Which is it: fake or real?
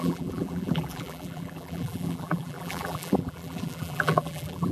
fake